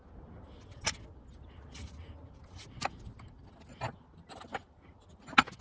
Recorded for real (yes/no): yes